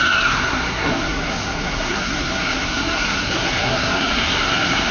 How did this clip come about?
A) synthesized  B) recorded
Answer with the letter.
A